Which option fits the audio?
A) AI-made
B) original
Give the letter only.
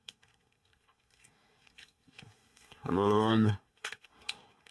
A